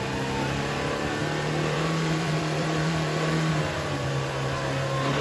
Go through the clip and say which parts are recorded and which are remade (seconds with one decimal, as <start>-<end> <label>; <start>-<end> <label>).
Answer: 0.0-1.2 recorded; 1.2-4.3 remade; 4.3-5.2 recorded